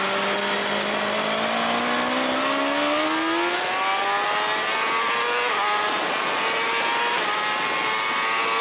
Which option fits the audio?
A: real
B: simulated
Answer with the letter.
A